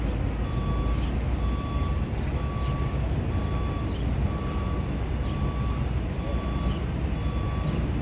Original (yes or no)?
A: yes